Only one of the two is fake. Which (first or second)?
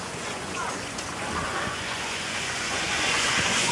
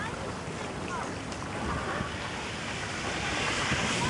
first